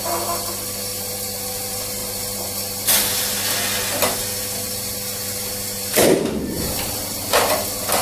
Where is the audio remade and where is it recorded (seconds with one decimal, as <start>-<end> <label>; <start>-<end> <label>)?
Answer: 0.0-8.0 recorded